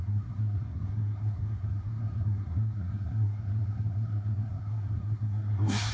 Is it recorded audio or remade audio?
remade